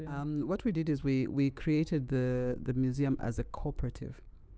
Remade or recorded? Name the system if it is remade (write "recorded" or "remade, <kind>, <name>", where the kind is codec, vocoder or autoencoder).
remade, codec, DAC